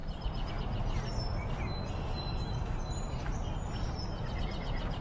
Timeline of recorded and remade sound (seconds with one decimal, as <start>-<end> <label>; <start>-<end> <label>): 0.0-0.5 remade; 0.5-2.3 recorded; 2.3-5.0 remade